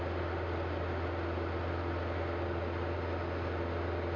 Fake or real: real